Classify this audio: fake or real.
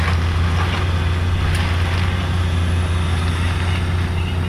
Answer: real